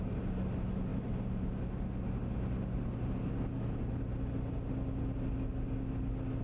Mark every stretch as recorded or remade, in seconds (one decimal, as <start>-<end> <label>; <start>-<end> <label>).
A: 0.0-6.4 recorded